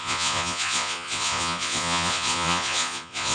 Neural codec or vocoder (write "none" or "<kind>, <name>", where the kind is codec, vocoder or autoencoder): vocoder, Vocos